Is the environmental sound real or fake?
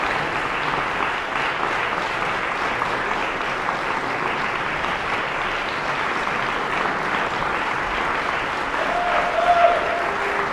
real